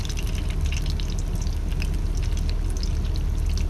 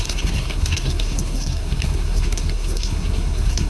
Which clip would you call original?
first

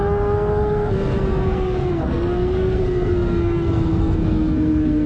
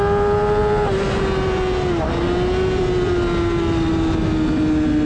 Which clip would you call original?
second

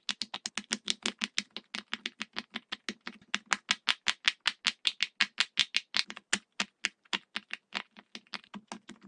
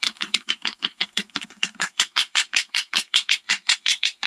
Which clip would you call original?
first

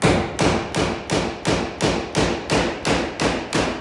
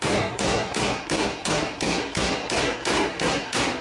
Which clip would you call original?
first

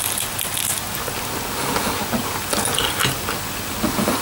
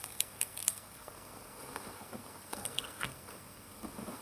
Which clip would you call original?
first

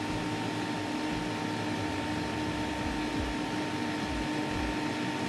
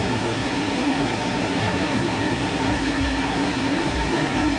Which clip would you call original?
first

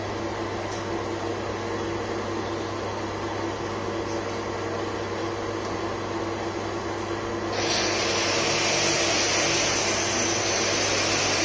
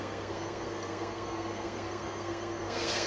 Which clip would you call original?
first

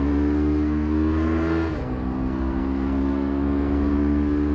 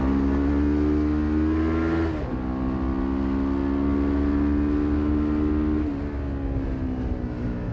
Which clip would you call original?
second